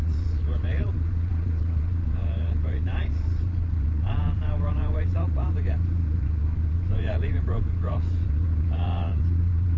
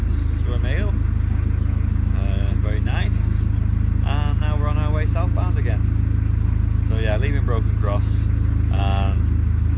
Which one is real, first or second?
second